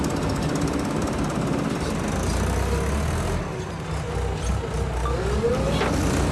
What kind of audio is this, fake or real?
real